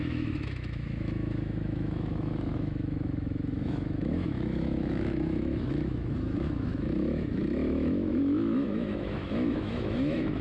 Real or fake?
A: fake